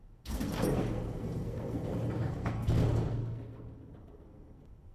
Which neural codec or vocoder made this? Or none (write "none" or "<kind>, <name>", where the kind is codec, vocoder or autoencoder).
codec, SNAC